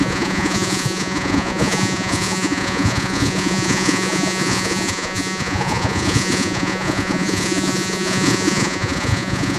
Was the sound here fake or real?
fake